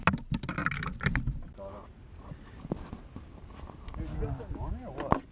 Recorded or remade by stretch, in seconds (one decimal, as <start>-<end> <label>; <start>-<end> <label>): 0.0-5.3 recorded